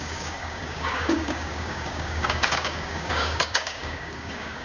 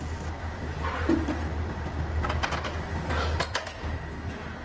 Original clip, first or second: second